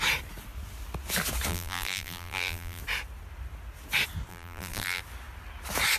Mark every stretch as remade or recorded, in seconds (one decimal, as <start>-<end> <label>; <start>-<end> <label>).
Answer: 0.0-1.5 recorded; 1.5-2.8 remade; 2.8-4.3 recorded; 4.3-5.0 remade; 5.0-6.0 recorded